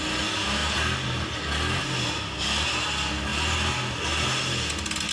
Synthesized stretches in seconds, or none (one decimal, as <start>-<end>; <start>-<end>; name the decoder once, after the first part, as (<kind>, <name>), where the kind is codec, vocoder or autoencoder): none